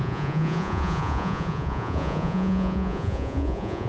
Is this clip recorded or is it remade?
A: remade